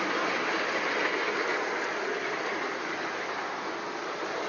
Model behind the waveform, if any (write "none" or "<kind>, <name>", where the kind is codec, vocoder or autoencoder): none